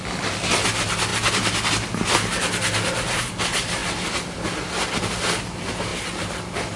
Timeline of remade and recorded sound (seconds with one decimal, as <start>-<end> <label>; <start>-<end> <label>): 0.0-6.8 recorded